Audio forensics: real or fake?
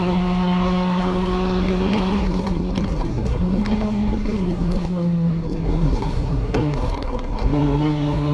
fake